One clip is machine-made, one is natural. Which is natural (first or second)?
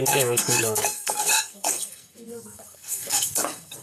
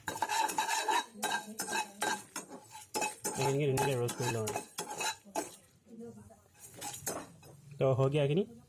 second